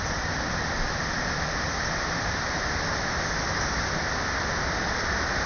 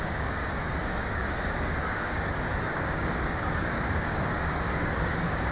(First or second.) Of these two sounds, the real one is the first